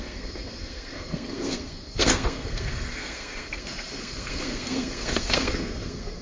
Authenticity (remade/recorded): remade